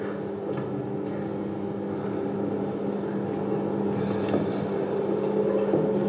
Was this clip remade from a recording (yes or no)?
no